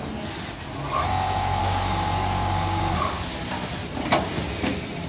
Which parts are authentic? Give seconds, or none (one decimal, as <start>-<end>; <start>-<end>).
0.0-1.6; 2.8-5.1